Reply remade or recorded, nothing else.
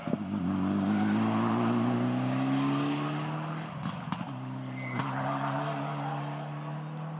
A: recorded